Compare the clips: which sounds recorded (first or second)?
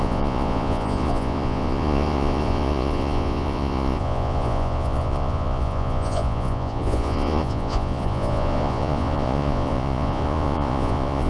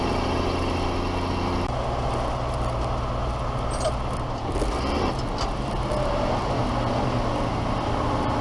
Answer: second